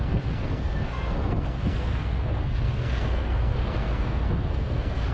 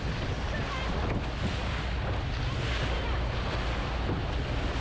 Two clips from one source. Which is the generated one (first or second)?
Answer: first